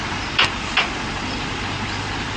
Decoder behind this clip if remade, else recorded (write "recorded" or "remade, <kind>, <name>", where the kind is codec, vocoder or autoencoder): remade, vocoder, BigVGAN v2